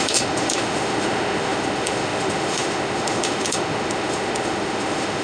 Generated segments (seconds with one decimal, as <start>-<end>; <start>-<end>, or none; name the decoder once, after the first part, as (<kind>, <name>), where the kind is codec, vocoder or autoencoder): 0.0-5.2 (autoencoder, DAC-VAE)